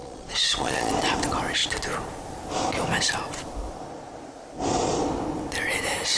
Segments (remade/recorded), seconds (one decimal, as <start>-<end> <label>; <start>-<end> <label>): 0.0-0.9 remade; 0.9-6.2 recorded